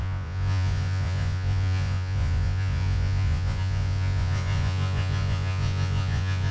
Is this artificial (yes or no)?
yes